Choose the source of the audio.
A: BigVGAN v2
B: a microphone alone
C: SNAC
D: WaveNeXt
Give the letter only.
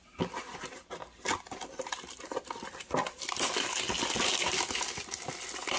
B